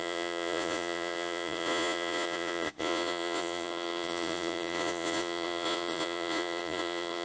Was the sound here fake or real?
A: fake